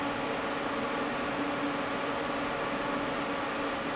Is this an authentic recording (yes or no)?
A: yes